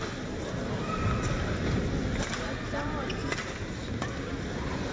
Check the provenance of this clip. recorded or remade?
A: recorded